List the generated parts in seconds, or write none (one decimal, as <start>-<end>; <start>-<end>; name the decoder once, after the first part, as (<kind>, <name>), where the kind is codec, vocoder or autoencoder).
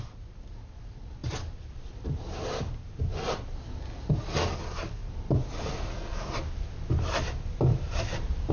7.7-8.5 (vocoder, BigVGAN v2)